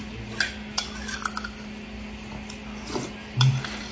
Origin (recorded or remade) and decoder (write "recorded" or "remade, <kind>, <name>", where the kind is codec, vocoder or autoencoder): recorded